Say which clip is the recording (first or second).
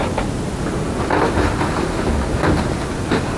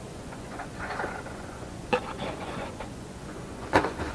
first